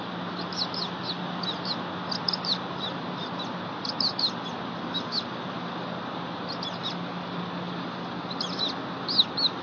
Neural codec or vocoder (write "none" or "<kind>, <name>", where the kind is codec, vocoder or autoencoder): none